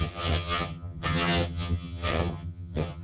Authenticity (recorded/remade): remade